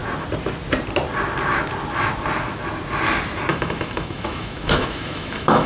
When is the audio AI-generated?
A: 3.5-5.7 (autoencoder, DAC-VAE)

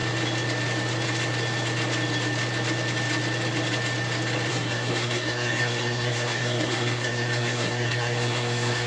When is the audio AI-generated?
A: 4.5-8.9 (codec, SNAC)

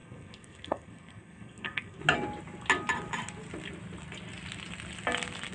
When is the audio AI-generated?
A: 0.0-2.0 (codec, SNAC)